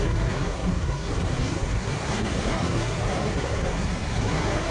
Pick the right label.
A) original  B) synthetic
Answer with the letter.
B